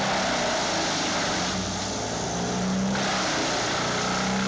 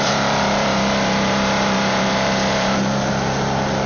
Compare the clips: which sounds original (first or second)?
first